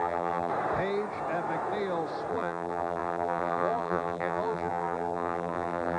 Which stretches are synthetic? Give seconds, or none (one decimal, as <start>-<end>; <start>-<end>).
0.0-0.5; 2.3-6.0